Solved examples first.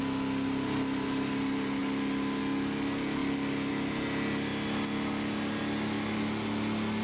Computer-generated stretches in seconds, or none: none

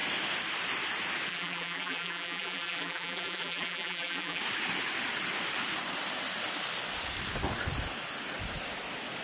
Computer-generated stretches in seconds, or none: 1.3-4.4 (vocoder, BigVGAN v2)

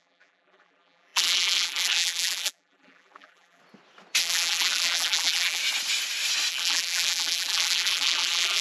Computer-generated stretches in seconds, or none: 0.0-3.6 (vocoder, BigVGAN v2); 4.2-5.6; 6.5-8.6

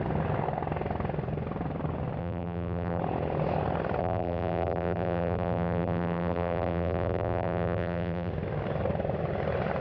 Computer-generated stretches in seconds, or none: 2.2-3.0 (vocoder, BigVGAN v2); 4.0-8.3